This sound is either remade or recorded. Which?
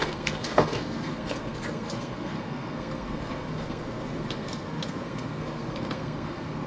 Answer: remade